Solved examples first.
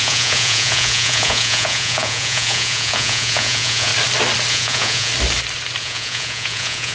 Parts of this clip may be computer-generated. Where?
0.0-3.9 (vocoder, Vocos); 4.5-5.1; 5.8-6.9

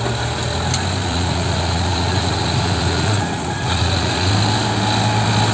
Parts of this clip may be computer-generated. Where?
1.0-4.3 (vocoder, Vocos)

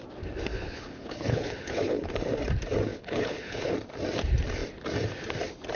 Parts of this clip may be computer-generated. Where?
0.5-2.1 (codec, HILCodec); 2.9-3.7